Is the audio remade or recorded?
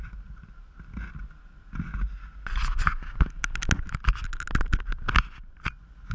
recorded